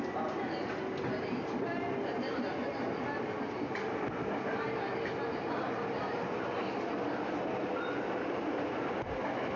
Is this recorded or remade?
recorded